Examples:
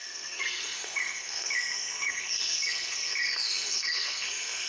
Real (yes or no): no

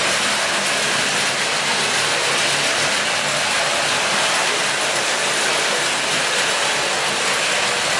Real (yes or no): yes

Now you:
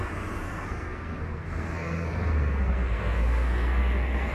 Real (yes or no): no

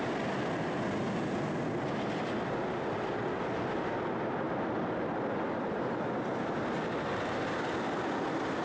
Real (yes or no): yes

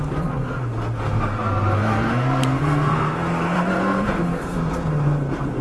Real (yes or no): no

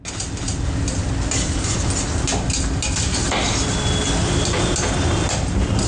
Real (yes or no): yes